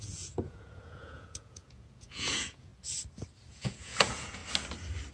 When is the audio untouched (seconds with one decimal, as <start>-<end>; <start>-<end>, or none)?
2.7-3.5; 4.4-5.1